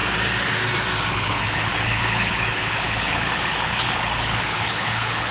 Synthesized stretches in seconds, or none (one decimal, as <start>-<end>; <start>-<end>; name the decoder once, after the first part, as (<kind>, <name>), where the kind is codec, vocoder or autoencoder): 1.1-5.3 (codec, HILCodec)